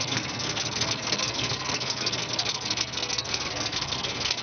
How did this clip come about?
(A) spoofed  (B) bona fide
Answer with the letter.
A